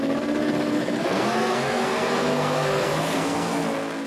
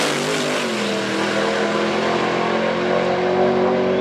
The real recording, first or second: second